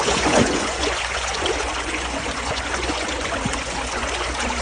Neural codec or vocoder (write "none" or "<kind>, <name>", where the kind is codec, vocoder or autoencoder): vocoder, Vocos